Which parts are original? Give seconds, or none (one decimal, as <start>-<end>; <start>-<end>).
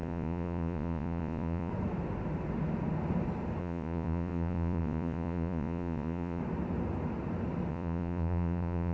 1.7-3.6; 6.4-7.7